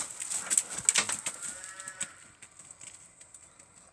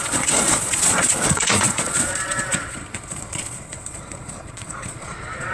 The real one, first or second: first